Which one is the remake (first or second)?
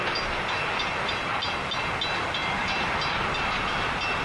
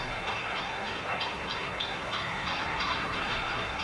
second